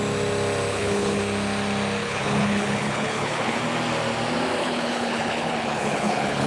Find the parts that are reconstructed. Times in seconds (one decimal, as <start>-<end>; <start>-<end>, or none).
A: 0.7-1.2; 2.0-3.6; 4.6-6.5